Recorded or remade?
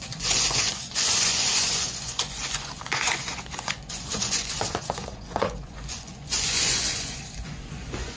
remade